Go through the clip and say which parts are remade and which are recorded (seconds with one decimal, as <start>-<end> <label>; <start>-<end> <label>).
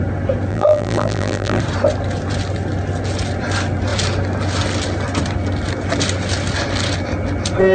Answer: 0.0-0.5 recorded; 0.5-1.6 remade; 1.6-7.7 recorded